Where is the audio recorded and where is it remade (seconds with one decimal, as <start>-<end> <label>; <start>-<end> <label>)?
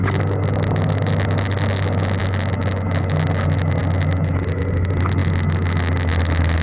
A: 0.0-6.6 recorded